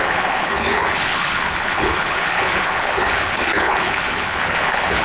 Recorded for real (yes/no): no